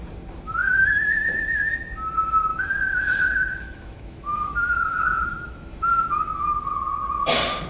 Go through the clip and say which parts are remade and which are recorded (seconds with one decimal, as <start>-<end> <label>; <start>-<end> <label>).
0.0-0.6 recorded; 0.6-1.7 remade; 1.7-2.5 recorded; 2.5-6.2 remade; 6.2-7.7 recorded